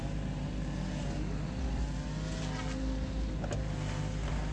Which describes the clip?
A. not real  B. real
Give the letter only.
B